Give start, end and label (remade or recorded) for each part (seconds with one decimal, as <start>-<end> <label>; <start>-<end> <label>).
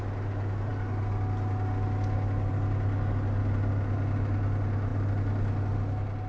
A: 0.0-6.3 recorded